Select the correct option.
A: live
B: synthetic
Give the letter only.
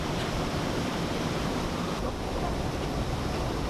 B